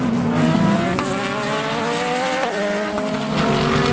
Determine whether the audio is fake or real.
real